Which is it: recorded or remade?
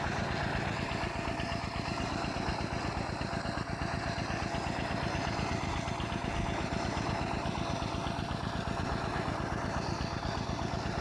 recorded